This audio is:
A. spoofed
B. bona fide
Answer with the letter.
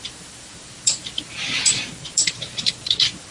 A